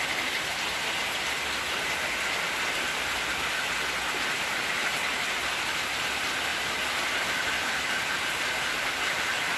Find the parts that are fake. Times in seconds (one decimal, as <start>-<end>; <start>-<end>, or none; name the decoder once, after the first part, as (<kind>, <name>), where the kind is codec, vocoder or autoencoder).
none